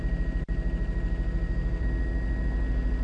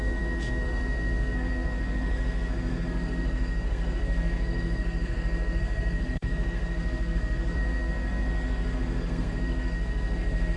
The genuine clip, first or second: first